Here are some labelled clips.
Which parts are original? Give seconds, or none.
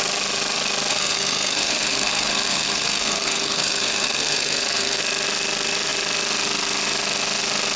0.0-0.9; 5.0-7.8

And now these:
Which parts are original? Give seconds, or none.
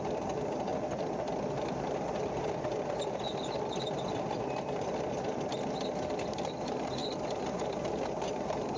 0.0-8.8